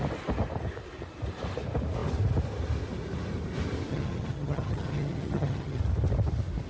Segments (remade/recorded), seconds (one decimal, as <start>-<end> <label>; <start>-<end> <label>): 0.0-3.9 recorded; 3.9-5.8 remade; 5.8-6.7 recorded